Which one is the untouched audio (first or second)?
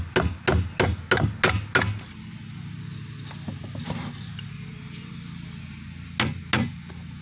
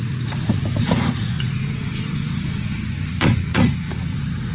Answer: first